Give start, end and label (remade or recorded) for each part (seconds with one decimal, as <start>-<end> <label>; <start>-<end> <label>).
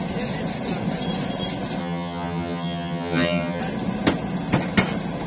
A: 0.0-1.8 recorded; 1.8-3.6 remade; 3.6-5.3 recorded